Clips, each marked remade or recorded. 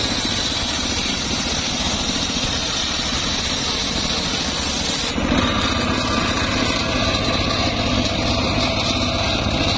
recorded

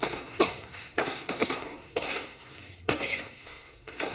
remade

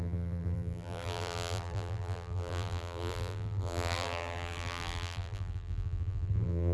remade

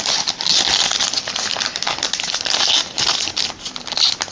recorded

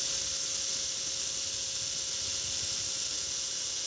recorded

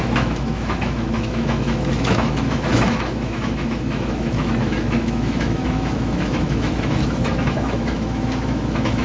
remade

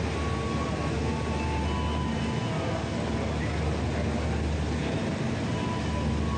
recorded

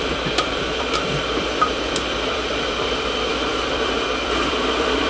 remade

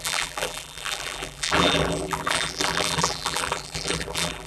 remade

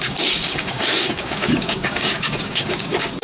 remade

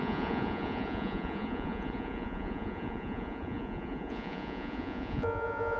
remade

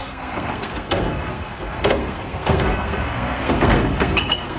remade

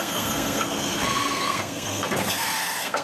remade